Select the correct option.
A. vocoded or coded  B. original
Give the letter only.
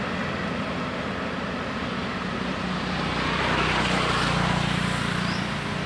B